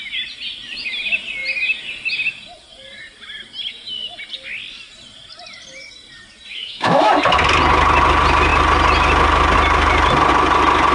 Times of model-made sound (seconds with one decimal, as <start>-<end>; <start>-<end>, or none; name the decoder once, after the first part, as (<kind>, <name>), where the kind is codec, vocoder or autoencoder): 6.5-7.1 (autoencoder, DAC-VAE)